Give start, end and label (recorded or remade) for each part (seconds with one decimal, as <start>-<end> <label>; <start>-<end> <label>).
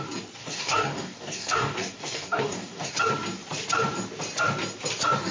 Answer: 0.0-0.4 recorded; 0.4-2.9 remade; 2.9-5.3 recorded